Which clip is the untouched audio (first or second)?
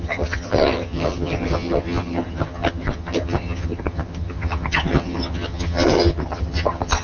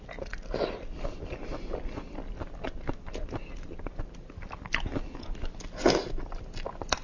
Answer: second